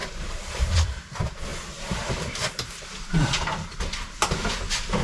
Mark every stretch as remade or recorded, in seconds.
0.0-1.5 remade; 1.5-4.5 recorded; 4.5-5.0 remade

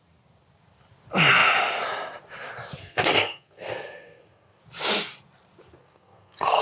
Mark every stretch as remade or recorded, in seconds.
0.0-2.8 recorded; 2.8-4.6 remade; 4.6-5.8 recorded; 5.8-6.6 remade

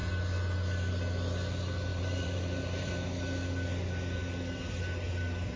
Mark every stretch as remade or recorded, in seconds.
0.0-1.9 recorded; 1.9-2.9 remade; 2.9-5.6 recorded

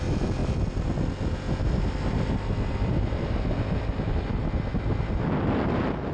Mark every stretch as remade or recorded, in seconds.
0.0-6.1 recorded

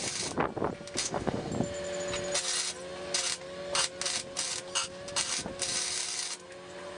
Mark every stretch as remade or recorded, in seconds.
0.0-1.0 recorded; 1.0-1.5 remade; 1.5-7.0 recorded

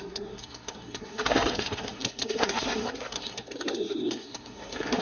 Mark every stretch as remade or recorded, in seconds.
0.0-5.0 remade

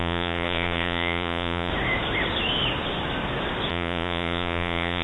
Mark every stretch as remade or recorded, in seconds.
0.0-1.7 remade; 1.7-3.7 recorded; 3.7-5.0 remade